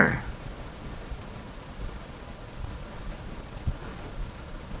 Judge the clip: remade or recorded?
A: remade